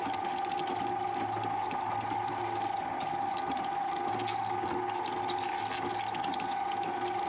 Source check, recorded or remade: recorded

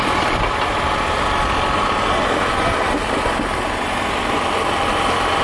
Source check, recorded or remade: recorded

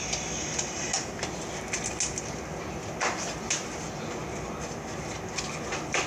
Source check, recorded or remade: recorded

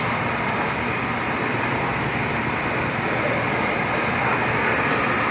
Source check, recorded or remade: recorded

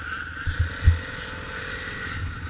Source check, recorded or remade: recorded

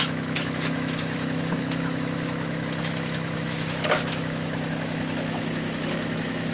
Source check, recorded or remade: remade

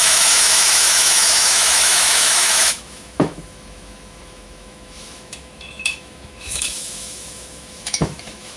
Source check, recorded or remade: remade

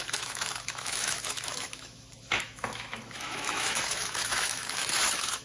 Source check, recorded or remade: remade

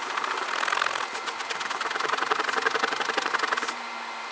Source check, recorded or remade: recorded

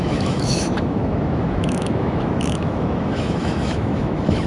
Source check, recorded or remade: remade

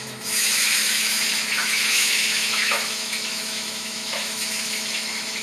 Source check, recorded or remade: remade